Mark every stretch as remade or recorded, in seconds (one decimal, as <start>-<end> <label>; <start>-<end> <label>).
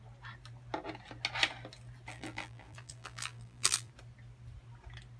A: 0.0-2.1 recorded; 2.1-3.9 remade; 3.9-5.2 recorded